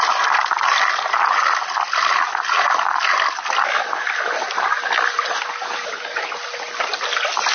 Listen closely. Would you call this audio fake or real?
real